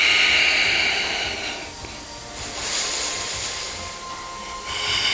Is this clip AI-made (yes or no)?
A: no